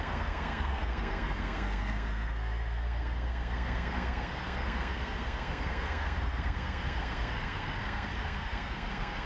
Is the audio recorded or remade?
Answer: remade